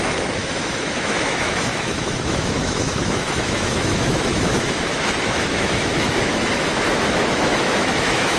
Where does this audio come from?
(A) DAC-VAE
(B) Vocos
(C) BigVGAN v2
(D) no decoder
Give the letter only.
A